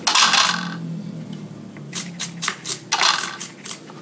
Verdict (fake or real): real